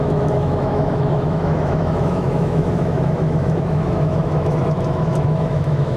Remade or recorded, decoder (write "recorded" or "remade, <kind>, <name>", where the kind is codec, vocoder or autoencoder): remade, autoencoder, DAC-VAE